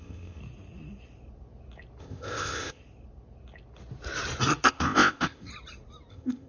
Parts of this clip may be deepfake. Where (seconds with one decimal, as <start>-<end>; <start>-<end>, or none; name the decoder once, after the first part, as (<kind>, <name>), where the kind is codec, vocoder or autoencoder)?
0.0-0.4 (codec, ZipCodec); 2.0-2.8; 4.7-5.5; 6.1-6.5